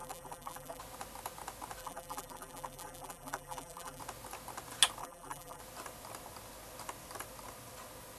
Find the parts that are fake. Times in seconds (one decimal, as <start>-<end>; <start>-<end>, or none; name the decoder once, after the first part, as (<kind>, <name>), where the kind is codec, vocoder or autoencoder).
0.0-0.8 (vocoder, BigVGAN v2); 1.8-4.0; 5.0-5.6